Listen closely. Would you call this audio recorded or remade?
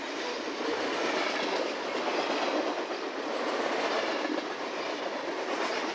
recorded